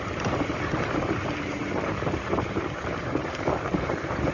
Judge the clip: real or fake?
fake